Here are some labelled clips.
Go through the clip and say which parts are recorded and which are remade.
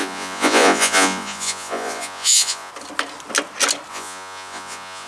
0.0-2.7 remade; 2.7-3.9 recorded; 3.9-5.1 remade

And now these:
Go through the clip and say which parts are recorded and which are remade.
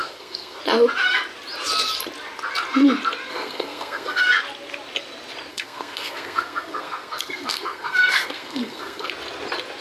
0.0-0.6 remade; 0.6-3.3 recorded; 3.3-4.2 remade; 4.2-5.5 recorded; 5.5-9.1 remade; 9.1-9.8 recorded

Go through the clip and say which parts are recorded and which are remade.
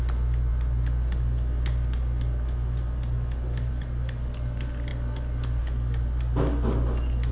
0.0-7.3 recorded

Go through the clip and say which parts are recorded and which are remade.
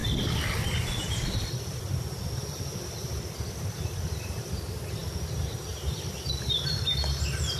0.0-7.6 remade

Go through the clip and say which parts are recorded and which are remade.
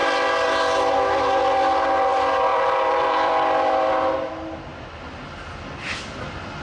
0.0-2.5 recorded; 2.5-4.3 remade; 4.3-6.6 recorded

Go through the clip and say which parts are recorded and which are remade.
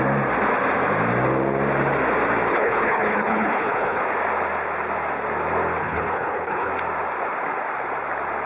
0.0-2.5 recorded; 2.5-4.0 remade; 4.0-5.8 recorded; 5.8-6.7 remade; 6.7-8.5 recorded